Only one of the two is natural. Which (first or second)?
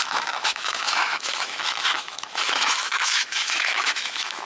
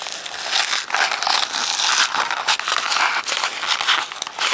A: second